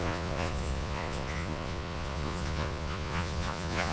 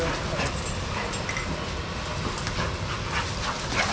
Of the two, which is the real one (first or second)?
second